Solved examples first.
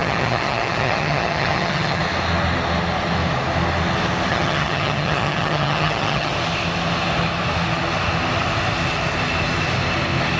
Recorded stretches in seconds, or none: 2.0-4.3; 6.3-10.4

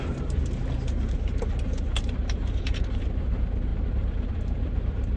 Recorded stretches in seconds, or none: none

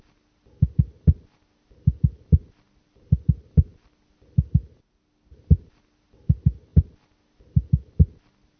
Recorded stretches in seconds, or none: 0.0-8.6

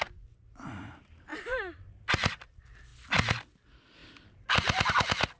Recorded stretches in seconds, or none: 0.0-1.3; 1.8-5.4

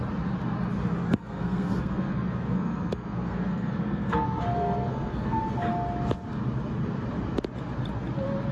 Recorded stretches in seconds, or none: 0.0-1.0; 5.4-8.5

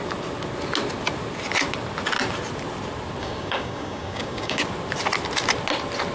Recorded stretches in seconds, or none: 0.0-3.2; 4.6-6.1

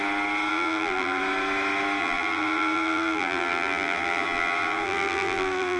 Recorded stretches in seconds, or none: 0.0-0.5; 1.2-2.0

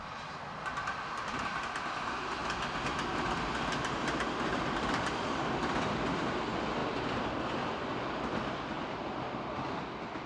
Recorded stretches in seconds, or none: 0.0-10.3